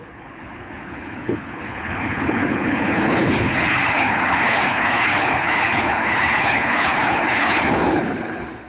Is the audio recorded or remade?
remade